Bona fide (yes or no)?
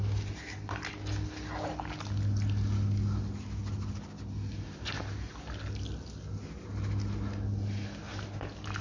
yes